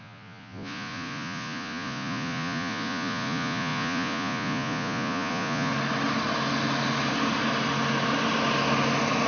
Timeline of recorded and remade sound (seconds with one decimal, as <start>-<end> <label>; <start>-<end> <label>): 0.0-5.7 remade; 5.7-9.3 recorded